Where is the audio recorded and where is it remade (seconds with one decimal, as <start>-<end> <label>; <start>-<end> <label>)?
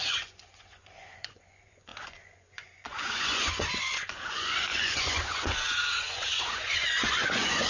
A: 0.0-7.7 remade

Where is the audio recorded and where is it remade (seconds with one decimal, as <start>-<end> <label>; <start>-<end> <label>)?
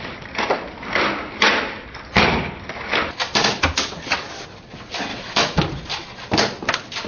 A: 0.0-5.1 recorded; 5.1-5.6 remade; 5.6-7.1 recorded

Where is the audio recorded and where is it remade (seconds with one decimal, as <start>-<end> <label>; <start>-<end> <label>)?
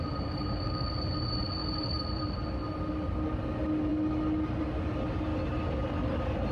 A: 0.0-1.6 recorded; 1.6-2.2 remade; 2.2-5.3 recorded; 5.3-6.5 remade